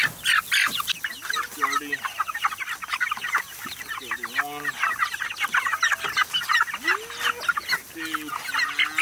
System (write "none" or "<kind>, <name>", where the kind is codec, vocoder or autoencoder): none